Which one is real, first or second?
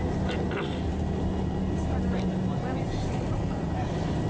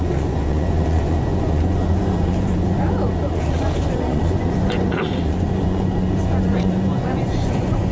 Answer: first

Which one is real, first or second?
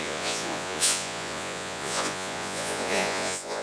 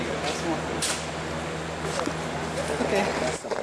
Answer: second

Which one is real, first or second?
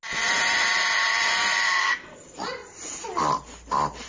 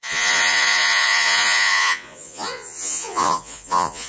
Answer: first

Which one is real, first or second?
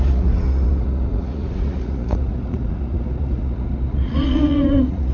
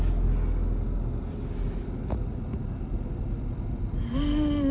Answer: second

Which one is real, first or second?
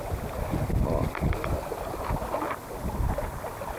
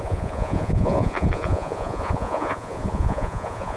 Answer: first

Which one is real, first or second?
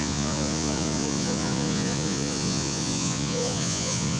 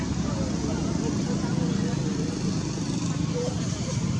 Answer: second